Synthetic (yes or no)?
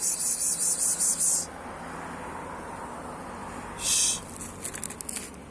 no